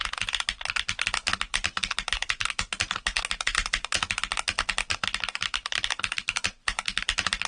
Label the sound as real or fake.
real